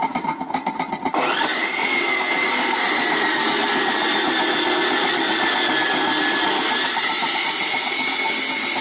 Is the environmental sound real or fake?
real